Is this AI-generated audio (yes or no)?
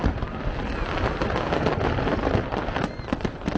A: no